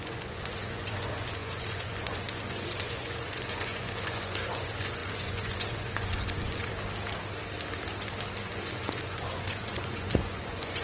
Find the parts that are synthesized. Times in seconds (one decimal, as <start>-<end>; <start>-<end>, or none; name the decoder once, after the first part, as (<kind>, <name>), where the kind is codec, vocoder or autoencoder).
0.0-6.7 (vocoder, Vocos); 8.4-10.8